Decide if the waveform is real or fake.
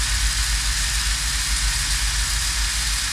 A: real